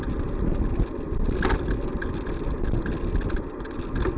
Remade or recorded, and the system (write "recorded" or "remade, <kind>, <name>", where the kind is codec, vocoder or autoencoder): recorded